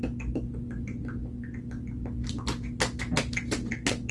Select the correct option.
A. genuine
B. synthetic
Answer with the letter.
A